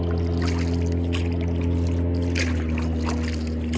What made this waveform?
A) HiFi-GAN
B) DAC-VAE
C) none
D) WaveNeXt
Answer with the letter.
C